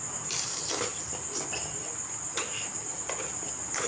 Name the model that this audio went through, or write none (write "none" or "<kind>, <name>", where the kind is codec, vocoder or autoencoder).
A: none